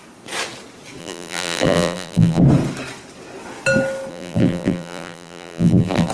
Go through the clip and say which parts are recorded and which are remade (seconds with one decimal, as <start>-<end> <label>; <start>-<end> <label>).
0.0-1.0 recorded; 1.0-2.4 remade; 2.4-4.1 recorded; 4.1-6.1 remade